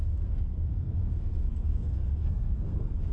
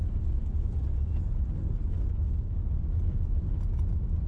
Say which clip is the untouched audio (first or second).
second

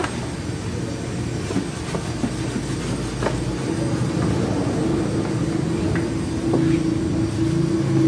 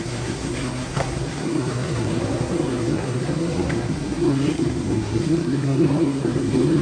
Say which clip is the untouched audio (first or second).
first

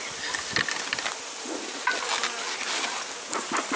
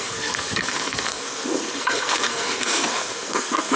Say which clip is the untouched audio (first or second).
first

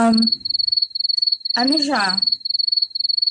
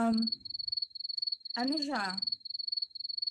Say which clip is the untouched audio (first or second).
first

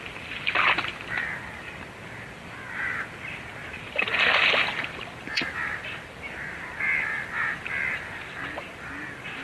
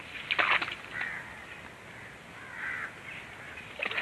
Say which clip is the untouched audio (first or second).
second